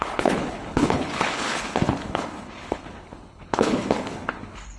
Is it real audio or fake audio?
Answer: fake